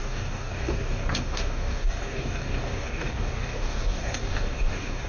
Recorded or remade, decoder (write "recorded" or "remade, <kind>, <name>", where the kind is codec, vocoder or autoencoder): remade, codec, DAC